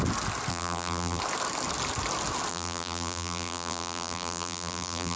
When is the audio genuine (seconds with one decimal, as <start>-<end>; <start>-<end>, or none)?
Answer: 0.0-0.5; 1.2-2.5